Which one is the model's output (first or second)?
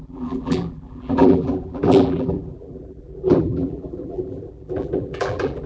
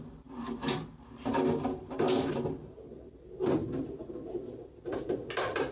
first